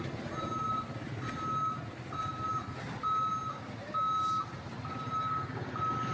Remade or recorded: recorded